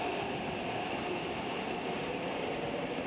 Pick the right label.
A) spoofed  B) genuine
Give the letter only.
B